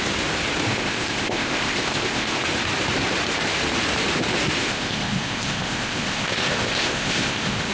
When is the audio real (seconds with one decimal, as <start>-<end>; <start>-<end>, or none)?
0.0-0.7; 2.4-4.6